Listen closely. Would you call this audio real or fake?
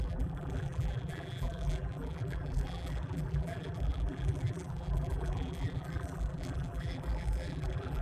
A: fake